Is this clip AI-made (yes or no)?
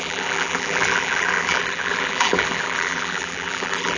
yes